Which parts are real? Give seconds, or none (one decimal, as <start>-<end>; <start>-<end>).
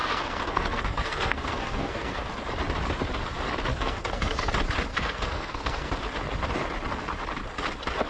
2.3-3.7; 4.5-4.9; 5.9-8.1